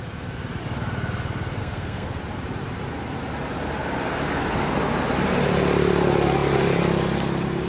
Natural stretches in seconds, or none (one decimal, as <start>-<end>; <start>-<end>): 0.0-1.6; 2.2-7.7